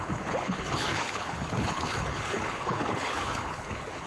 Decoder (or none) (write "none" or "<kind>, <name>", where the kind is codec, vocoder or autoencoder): codec, HILCodec